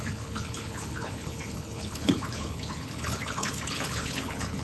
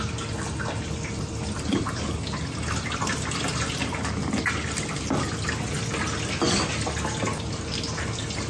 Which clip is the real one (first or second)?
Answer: second